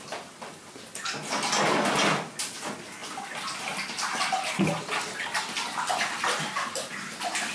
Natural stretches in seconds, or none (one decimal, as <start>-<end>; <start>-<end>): 0.0-7.5